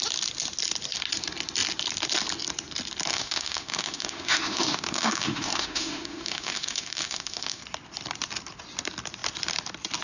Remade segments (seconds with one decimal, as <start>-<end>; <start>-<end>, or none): 3.1-7.6